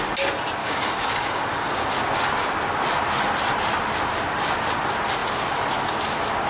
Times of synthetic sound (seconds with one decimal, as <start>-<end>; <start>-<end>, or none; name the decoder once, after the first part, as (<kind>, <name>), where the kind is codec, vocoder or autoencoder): 0.6-1.9 (codec, DAC)